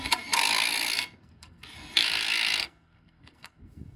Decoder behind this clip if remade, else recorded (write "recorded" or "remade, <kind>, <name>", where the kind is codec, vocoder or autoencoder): remade, codec, SNAC